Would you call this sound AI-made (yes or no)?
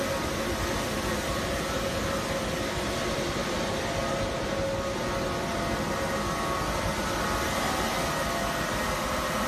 no